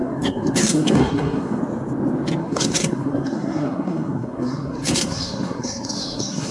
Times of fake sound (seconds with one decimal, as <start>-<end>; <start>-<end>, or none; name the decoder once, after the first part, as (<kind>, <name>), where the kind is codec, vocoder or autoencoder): 0.0-1.6 (codec, SNAC); 2.4-6.5